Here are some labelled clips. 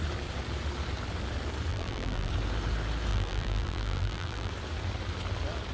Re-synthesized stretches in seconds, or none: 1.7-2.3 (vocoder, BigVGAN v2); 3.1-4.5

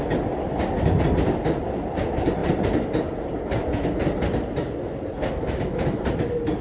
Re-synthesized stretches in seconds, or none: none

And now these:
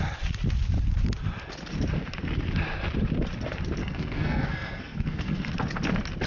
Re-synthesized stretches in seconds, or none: 3.8-5.5 (codec, SNAC)

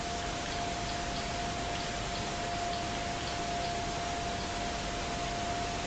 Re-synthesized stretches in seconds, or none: none

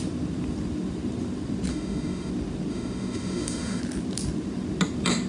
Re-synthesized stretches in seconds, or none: 1.7-2.3 (autoencoder, DAC-VAE); 2.7-3.8